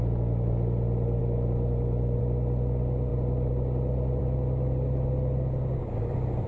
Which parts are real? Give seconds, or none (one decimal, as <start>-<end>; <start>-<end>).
0.0-6.5